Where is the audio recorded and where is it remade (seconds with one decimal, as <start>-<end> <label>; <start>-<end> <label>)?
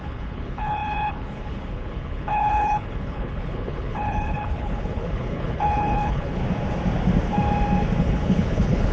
0.0-6.4 remade; 6.4-8.0 recorded; 8.0-8.9 remade